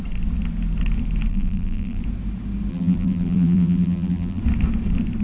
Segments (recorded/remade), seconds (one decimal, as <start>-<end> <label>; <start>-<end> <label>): 0.0-1.3 recorded; 1.3-2.0 remade; 2.0-2.7 recorded; 2.7-4.4 remade; 4.4-5.2 recorded